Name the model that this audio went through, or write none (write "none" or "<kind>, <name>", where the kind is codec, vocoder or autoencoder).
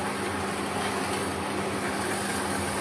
none